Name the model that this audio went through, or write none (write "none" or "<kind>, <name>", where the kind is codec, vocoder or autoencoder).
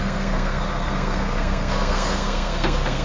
codec, SNAC